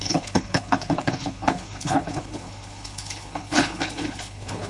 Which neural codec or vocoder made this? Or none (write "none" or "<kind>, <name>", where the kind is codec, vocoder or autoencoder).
codec, HILCodec